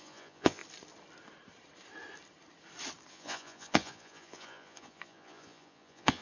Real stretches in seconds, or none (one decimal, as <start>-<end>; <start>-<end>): 0.6-3.1